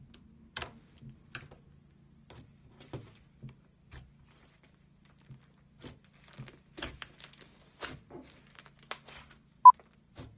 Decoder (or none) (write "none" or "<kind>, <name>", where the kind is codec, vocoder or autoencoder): none